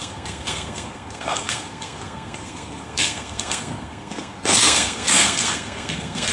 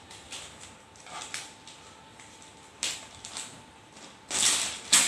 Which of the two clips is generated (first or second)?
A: first